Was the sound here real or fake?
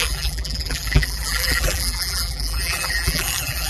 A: fake